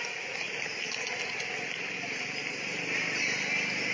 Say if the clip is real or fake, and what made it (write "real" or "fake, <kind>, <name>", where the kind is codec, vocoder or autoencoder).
real